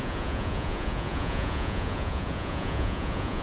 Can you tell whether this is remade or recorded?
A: remade